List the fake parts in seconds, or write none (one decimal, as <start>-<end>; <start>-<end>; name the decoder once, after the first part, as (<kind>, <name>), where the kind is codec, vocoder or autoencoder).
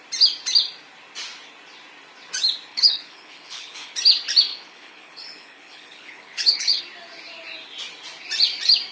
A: 2.7-3.9 (codec, HILCodec); 4.5-6.8